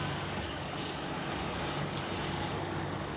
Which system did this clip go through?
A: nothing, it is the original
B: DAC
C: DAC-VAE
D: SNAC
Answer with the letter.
B